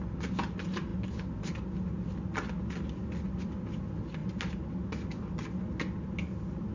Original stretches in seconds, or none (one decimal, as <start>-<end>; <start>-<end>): 0.0-6.7